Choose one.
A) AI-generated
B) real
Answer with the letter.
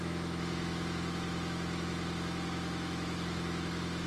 A